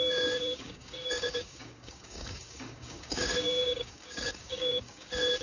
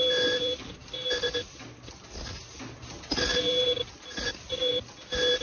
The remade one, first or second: first